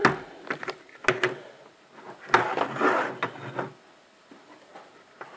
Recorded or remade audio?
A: recorded